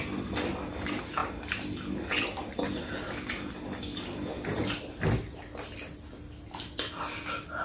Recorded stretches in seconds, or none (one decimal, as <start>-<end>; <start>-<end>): 0.0-7.6